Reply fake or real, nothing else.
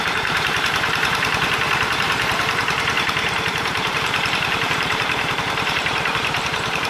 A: fake